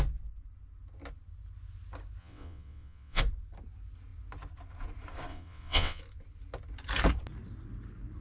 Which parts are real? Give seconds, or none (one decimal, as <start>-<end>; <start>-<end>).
0.0-2.2; 3.2-5.3; 6.0-8.2